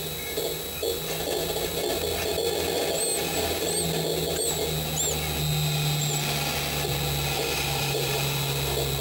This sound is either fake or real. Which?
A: real